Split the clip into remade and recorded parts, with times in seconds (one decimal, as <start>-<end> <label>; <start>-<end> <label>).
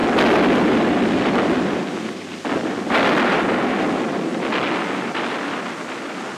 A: 0.0-6.4 recorded